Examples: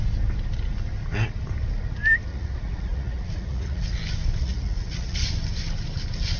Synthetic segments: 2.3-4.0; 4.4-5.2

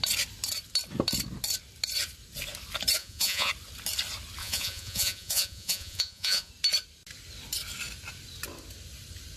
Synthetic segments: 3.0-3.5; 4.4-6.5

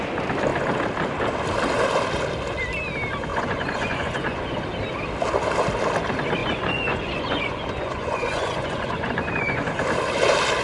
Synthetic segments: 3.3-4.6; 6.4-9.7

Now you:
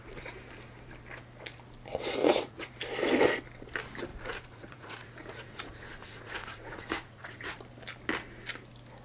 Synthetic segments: 2.2-2.7; 4.1-7.6